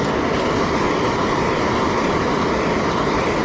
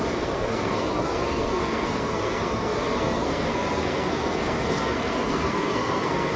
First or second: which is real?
first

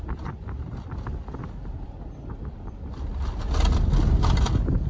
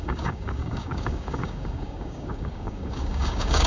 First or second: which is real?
first